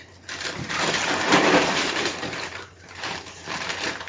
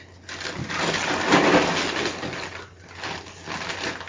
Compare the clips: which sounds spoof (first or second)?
first